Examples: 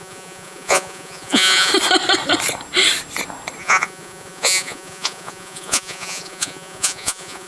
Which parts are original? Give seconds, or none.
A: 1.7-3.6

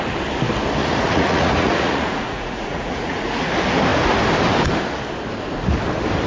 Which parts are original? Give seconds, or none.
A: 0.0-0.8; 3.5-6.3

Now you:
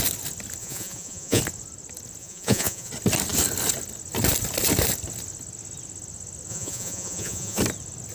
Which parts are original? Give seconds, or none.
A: 0.0-0.6; 1.4-2.2; 2.9-6.5; 7.6-8.1

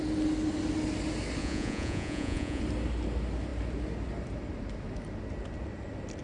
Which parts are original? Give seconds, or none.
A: 0.0-1.4; 2.6-6.2

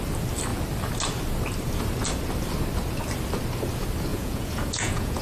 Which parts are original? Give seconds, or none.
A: 0.0-4.1